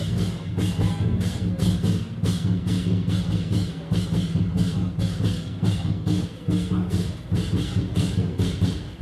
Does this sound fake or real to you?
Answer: fake